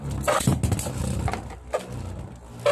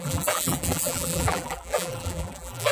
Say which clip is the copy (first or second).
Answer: second